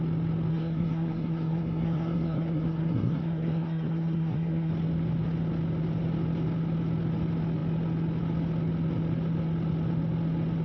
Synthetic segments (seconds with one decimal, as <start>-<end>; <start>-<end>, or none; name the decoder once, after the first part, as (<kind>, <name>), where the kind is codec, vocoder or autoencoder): 0.5-4.7 (codec, SNAC)